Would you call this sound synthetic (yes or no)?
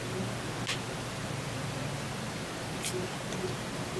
no